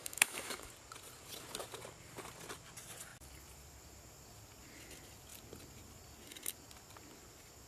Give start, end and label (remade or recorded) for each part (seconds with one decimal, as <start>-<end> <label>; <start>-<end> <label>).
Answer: 0.0-0.7 remade; 0.7-7.7 recorded